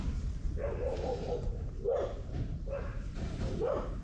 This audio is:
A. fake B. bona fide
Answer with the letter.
A